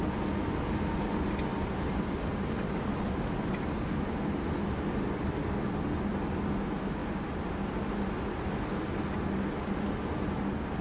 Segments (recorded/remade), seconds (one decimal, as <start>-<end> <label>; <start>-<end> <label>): 0.0-10.8 recorded